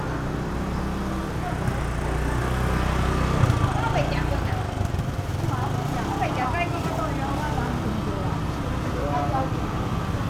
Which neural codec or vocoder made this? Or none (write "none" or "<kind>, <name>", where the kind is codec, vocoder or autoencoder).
none